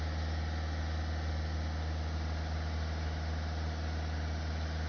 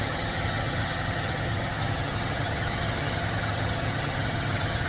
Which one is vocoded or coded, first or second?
second